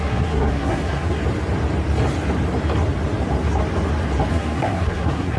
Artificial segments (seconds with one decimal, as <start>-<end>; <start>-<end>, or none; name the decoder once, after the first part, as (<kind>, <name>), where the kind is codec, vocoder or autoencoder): 0.0-1.2 (codec, SNAC); 4.3-5.4